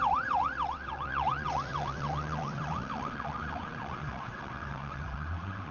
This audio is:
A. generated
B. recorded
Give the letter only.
A